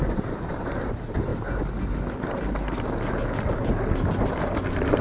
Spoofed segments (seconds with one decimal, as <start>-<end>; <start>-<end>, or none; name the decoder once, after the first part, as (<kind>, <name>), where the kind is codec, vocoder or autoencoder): 0.0-1.3 (vocoder, BigVGAN v2); 4.3-5.0